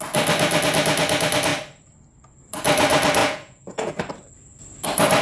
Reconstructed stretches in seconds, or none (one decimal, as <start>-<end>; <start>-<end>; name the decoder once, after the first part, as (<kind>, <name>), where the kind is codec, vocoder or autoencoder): 3.2-4.0 (vocoder, Vocos)